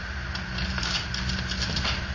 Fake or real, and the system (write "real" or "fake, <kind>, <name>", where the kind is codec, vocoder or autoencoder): fake, vocoder, BigVGAN v2